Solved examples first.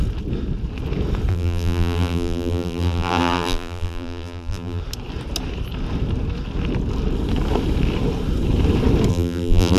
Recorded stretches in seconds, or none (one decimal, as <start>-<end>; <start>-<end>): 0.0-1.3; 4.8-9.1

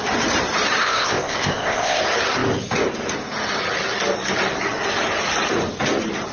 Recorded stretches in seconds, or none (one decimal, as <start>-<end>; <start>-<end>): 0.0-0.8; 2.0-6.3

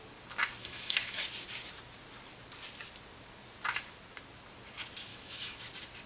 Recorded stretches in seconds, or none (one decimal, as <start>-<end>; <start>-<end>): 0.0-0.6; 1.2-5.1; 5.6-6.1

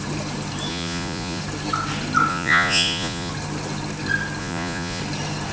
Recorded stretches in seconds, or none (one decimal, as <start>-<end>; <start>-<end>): 0.0-0.7; 1.4-2.3; 3.3-4.4; 5.0-5.5

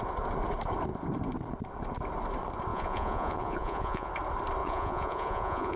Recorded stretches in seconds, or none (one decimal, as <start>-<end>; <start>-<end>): 0.0-2.7; 4.1-4.6

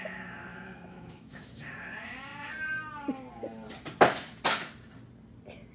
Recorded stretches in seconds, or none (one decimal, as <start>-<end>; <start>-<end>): 0.0-0.5; 1.6-5.7